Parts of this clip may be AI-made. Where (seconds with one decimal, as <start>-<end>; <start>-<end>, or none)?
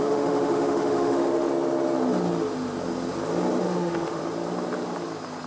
0.0-1.5; 3.6-4.2